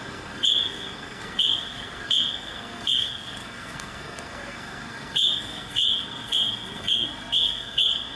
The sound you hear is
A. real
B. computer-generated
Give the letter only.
B